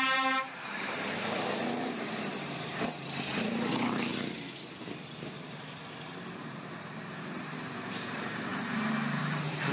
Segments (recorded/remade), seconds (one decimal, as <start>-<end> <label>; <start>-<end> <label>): 0.0-4.1 remade; 4.1-7.2 recorded; 7.2-9.7 remade